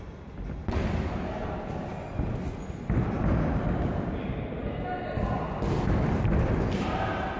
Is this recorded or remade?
recorded